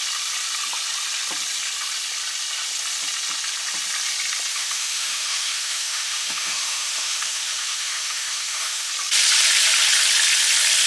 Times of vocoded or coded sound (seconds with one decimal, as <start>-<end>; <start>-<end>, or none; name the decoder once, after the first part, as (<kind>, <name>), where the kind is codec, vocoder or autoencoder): 4.5-8.9 (autoencoder, DAC-VAE)